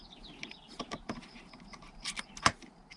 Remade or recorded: recorded